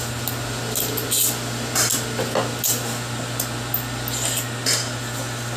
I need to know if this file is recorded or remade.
recorded